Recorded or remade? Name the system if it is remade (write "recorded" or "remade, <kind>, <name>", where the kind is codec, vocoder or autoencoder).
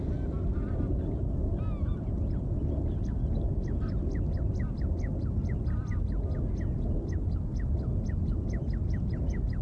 recorded